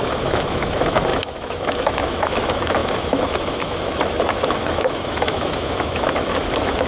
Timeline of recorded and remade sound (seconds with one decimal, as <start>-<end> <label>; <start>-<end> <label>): 0.0-6.9 remade